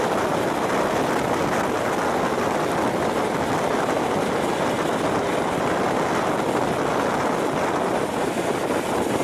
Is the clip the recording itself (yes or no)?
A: yes